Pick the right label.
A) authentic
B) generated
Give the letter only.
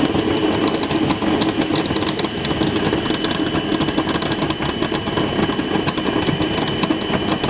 A